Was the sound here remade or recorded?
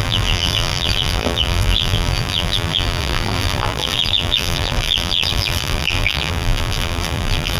remade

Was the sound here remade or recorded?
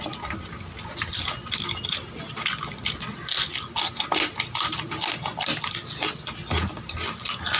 recorded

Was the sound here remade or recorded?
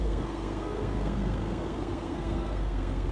remade